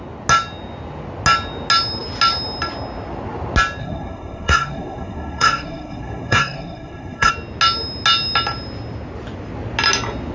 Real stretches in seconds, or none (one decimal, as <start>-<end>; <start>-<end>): 0.0-3.8; 7.3-10.3